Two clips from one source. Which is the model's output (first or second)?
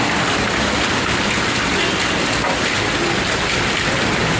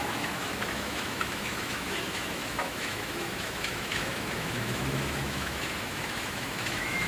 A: second